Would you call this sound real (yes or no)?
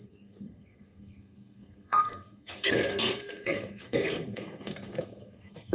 no